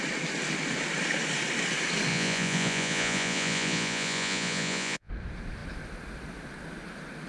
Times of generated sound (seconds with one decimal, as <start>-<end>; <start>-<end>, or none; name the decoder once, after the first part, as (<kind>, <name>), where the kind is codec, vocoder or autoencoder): 2.1-5.1 (vocoder, Vocos)